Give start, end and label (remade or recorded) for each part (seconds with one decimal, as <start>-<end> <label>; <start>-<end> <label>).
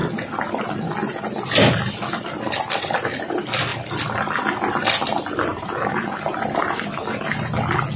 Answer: 0.0-5.5 recorded; 5.5-7.2 remade; 7.2-8.0 recorded